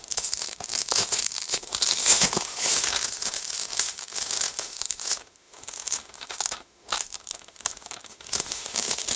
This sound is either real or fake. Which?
fake